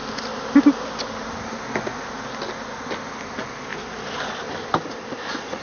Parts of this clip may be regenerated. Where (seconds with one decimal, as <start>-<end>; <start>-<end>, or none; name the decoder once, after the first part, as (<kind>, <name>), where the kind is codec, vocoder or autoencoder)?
none